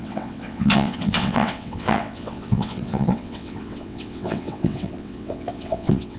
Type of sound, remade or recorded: remade